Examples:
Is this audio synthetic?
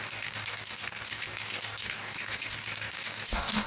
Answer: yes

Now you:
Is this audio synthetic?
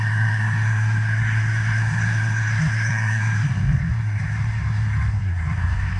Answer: yes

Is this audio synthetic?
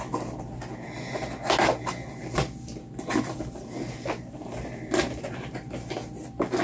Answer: no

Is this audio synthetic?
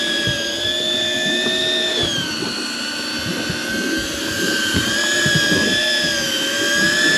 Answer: yes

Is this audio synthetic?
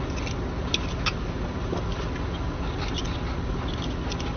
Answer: no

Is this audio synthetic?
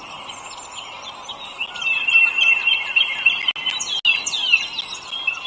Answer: no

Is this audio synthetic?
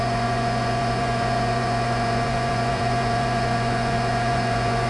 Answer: yes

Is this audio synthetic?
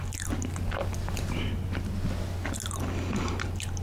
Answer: no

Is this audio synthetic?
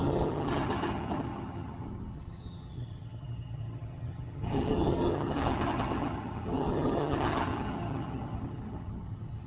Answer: yes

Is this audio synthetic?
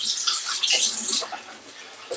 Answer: no